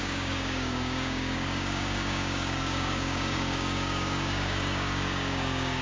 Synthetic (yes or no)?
yes